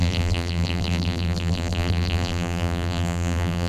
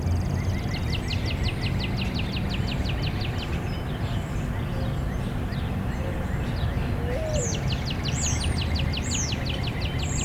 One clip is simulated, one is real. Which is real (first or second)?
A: second